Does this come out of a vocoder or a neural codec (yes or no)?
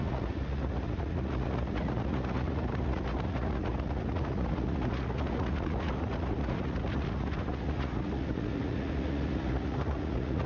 yes